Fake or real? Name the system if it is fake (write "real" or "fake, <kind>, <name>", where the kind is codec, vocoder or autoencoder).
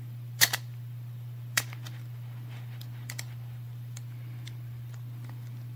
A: fake, vocoder, BigVGAN v2